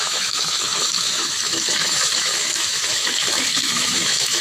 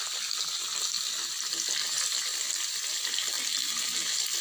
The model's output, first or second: first